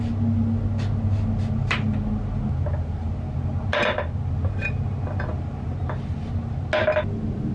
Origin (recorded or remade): recorded